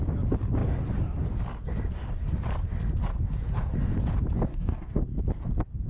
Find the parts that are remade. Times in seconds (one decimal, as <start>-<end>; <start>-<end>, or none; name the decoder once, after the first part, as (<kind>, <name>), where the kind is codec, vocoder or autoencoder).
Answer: 4.5-5.0 (codec, DAC)